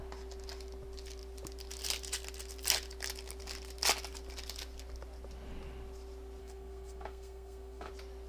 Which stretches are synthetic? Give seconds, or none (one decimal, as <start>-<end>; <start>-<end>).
6.4-7.9

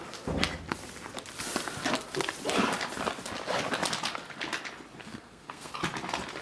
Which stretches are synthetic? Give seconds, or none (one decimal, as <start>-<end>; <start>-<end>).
5.0-5.7